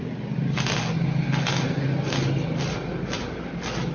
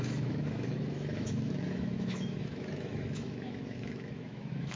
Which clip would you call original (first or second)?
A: first